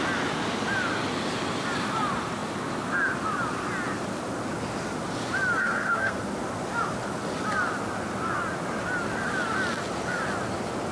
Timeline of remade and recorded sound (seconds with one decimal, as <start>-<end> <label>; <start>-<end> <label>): 0.0-5.6 recorded; 5.6-6.2 remade; 6.2-10.9 recorded